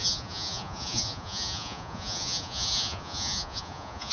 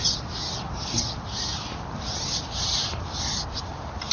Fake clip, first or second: first